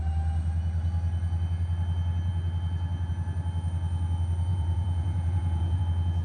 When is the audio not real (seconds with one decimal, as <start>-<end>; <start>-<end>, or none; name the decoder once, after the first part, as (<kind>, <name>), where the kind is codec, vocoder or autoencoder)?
4.5-5.8 (vocoder, Vocos)